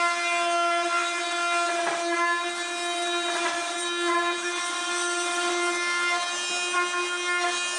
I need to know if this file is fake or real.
real